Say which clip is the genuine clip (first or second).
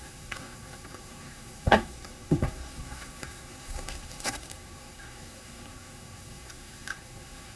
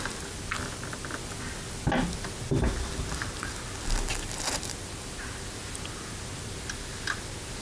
second